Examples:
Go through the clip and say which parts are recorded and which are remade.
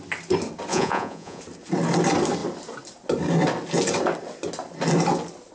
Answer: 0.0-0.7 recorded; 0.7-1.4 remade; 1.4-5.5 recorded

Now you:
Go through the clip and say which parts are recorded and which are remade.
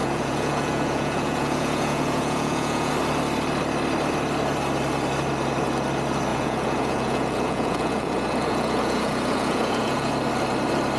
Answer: 0.0-2.9 remade; 2.9-6.3 recorded; 6.3-10.1 remade; 10.1-11.0 recorded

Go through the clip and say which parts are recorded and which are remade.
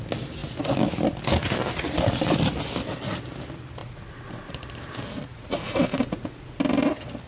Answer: 0.0-3.8 recorded; 3.8-4.5 remade; 4.5-5.3 recorded; 5.3-6.6 remade; 6.6-7.3 recorded